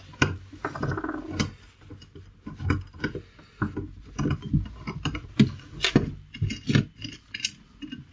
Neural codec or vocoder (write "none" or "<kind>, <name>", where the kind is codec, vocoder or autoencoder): none